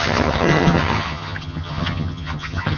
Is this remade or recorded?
remade